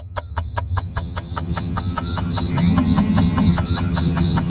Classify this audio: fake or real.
fake